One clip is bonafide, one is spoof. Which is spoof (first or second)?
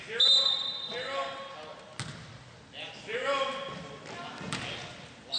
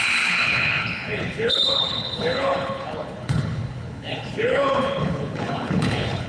second